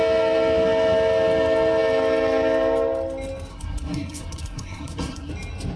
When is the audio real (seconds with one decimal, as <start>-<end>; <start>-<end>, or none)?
0.0-3.5; 5.3-5.8